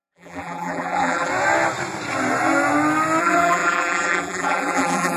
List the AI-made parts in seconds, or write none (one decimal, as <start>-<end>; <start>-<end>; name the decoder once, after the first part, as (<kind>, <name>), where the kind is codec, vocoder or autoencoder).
0.0-1.3 (vocoder, BigVGAN v2); 3.2-5.2